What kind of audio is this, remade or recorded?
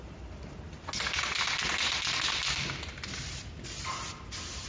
recorded